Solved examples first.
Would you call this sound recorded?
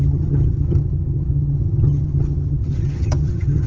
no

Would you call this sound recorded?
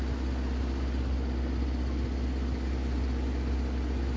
yes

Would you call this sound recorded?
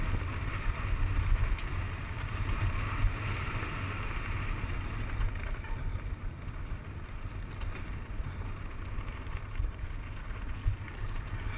yes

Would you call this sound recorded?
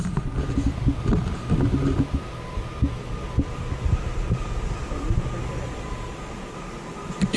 yes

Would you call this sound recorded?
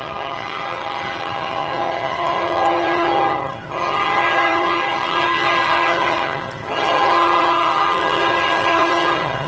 no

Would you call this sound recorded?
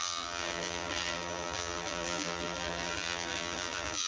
no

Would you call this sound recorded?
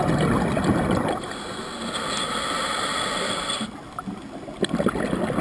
yes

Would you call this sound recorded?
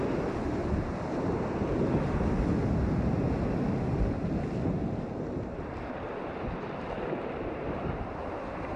yes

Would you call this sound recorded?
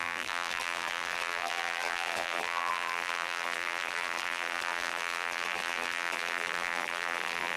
no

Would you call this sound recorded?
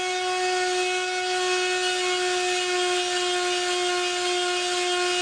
yes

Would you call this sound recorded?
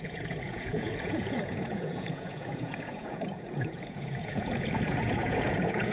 no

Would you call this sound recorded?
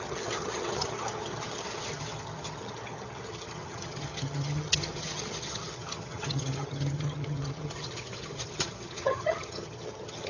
no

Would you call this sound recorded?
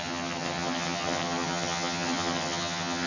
no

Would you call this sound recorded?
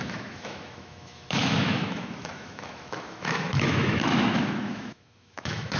no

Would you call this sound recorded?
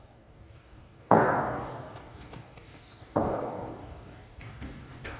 no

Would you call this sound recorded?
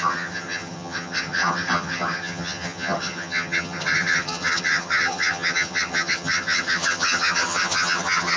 no